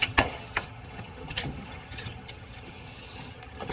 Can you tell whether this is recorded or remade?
remade